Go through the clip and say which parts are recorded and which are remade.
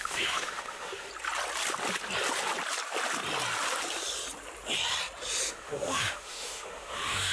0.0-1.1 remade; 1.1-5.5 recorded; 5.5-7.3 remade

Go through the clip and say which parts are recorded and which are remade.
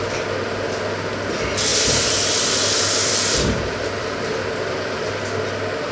0.0-1.7 recorded; 1.7-5.2 remade; 5.2-5.9 recorded